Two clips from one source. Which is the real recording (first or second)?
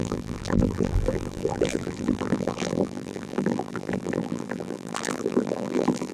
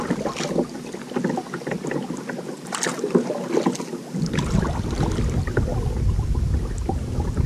second